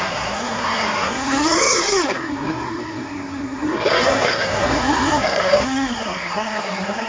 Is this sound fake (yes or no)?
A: yes